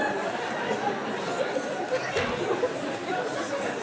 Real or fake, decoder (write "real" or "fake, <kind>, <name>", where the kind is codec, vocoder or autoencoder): real